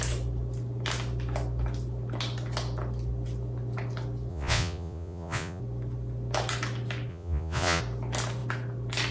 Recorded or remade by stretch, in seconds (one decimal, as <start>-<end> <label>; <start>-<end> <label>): 0.0-4.3 recorded; 4.3-5.6 remade; 5.6-7.1 recorded; 7.1-7.8 remade; 7.8-9.1 recorded

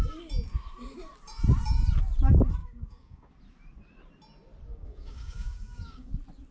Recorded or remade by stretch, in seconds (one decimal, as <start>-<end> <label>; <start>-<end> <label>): 0.0-2.6 recorded; 2.6-3.3 remade; 3.3-4.7 recorded; 4.7-6.1 remade; 6.1-6.5 recorded

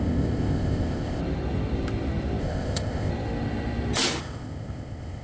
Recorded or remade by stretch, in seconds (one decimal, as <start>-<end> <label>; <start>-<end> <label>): 0.0-1.2 remade; 1.2-2.4 recorded; 2.4-3.1 remade; 3.1-4.2 recorded; 4.2-5.2 remade

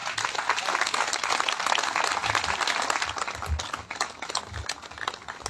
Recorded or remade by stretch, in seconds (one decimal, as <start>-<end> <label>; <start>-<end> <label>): 0.0-5.5 recorded

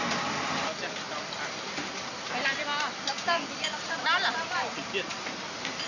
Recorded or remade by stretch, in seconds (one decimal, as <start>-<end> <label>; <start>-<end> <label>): 0.0-5.9 recorded